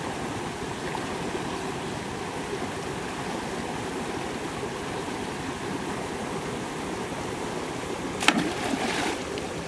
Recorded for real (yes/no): yes